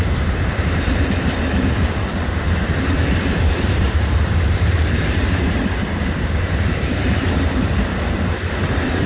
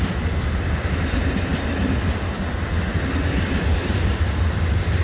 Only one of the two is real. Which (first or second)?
second